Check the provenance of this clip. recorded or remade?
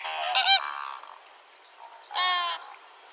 recorded